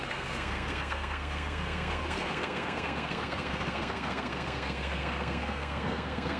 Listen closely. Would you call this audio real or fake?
fake